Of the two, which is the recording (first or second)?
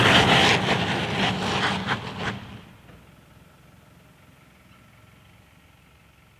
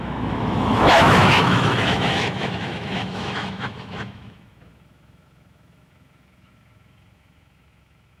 first